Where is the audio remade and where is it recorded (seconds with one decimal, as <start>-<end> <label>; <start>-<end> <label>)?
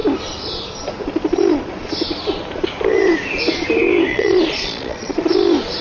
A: 0.0-4.1 recorded; 4.1-5.3 remade; 5.3-5.8 recorded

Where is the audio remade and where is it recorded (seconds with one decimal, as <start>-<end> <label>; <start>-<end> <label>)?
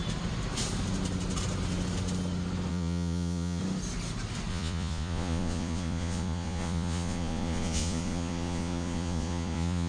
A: 0.0-2.7 recorded; 2.7-3.6 remade; 3.6-4.5 recorded; 4.5-9.9 remade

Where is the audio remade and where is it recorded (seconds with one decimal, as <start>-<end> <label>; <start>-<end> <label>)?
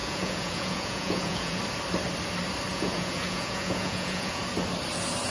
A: 0.0-1.6 remade; 1.6-2.7 recorded; 2.7-4.4 remade; 4.4-5.3 recorded